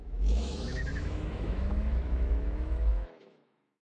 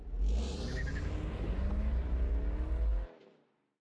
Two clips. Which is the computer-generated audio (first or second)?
first